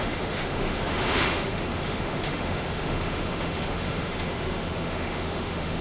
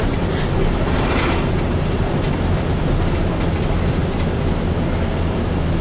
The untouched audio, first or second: second